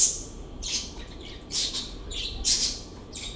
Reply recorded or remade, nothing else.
remade